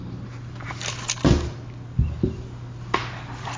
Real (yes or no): yes